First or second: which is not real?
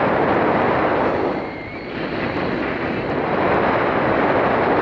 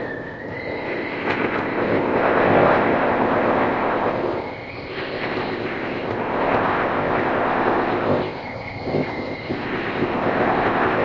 second